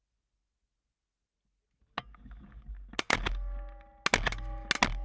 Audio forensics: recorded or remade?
recorded